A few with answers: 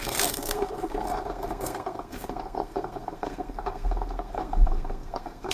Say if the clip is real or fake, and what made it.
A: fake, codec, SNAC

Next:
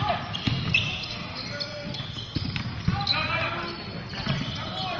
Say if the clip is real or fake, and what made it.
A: real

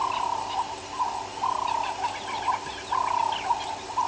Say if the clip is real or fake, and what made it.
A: real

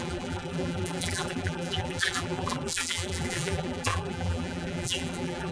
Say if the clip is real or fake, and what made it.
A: fake, vocoder, BigVGAN v2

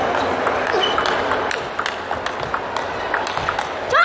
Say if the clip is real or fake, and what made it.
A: real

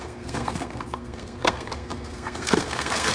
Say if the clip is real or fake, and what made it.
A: fake, codec, SNAC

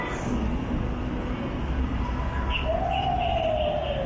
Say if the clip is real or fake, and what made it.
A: real